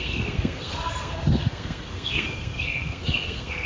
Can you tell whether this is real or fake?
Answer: fake